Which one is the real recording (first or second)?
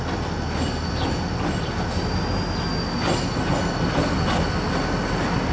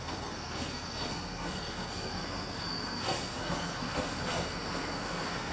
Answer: first